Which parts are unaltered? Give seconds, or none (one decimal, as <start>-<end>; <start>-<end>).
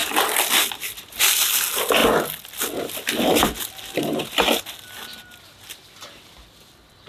0.0-7.1